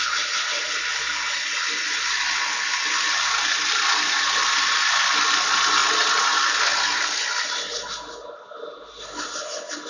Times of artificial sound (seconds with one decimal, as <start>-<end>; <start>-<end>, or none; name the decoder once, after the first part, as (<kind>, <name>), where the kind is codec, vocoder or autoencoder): none